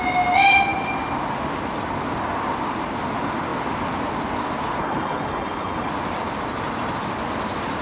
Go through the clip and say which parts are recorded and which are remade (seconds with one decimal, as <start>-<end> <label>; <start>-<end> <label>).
0.0-4.8 recorded; 4.8-5.9 remade; 5.9-7.8 recorded

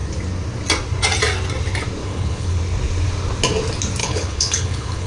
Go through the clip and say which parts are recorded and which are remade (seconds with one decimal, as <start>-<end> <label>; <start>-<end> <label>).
0.0-2.0 recorded; 2.0-2.6 remade; 2.6-4.0 recorded; 4.0-5.1 remade

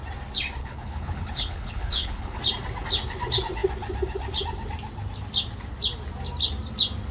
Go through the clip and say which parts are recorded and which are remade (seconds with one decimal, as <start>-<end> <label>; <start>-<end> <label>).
0.0-0.6 recorded; 0.6-2.4 remade; 2.4-7.1 recorded